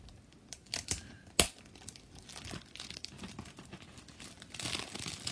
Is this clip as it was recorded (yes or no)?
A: yes